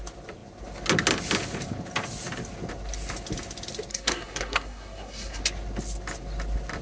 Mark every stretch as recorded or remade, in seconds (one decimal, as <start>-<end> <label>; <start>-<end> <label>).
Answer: 0.0-3.9 recorded; 3.9-5.4 remade; 5.4-6.8 recorded

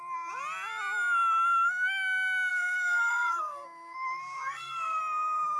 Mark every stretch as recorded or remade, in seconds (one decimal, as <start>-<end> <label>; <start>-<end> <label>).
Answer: 0.0-2.5 recorded; 2.5-5.0 remade; 5.0-5.6 recorded

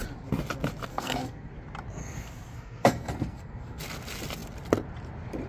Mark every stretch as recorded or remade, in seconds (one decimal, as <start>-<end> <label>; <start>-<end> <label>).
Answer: 0.0-0.9 recorded; 0.9-1.5 remade; 1.5-2.0 recorded; 2.0-3.8 remade; 3.8-5.5 recorded

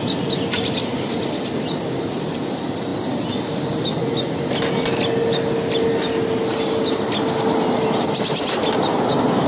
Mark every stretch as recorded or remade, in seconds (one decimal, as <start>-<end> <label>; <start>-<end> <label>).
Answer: 0.0-9.5 recorded

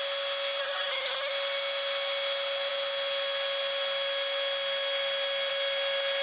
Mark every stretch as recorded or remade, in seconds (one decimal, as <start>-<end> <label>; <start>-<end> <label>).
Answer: 0.0-0.6 recorded; 0.6-1.3 remade; 1.3-6.2 recorded

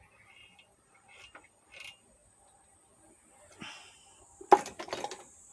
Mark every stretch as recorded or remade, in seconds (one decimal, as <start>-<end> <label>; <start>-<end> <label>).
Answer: 0.0-5.5 recorded

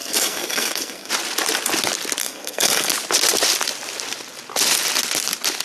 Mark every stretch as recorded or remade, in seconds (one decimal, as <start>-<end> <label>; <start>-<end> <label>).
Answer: 0.0-1.1 remade; 1.1-2.2 recorded; 2.2-2.9 remade; 2.9-5.6 recorded